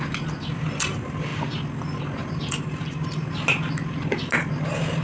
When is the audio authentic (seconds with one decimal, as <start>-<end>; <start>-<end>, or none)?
0.0-5.0